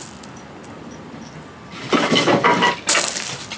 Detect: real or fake real